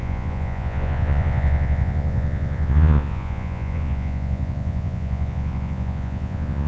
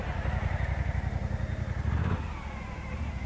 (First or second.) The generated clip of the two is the first